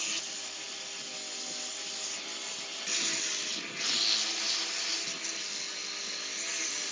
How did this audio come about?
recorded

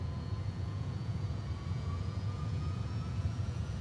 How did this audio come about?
remade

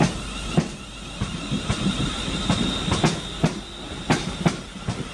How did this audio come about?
remade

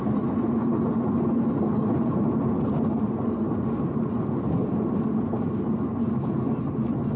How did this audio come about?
recorded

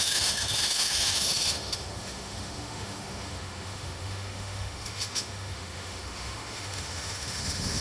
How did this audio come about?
remade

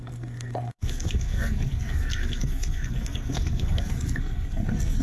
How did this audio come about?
remade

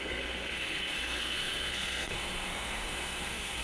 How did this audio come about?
remade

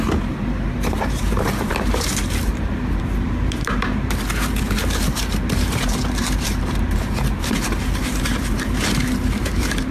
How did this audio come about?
remade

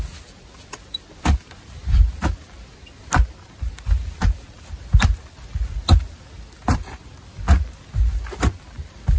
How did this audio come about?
recorded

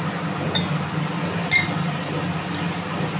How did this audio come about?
recorded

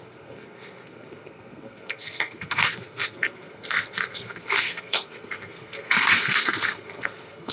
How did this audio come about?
remade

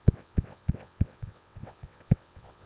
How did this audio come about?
remade